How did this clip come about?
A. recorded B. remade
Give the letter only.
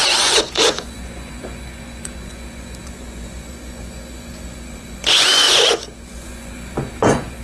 B